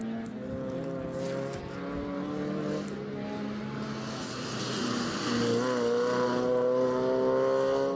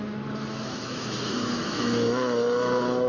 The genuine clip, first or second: first